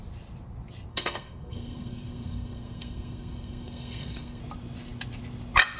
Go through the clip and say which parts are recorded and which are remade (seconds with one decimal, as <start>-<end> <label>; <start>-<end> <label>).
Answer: 0.0-0.9 recorded; 0.9-4.4 remade; 4.4-5.8 recorded